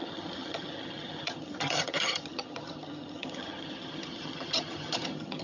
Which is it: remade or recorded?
remade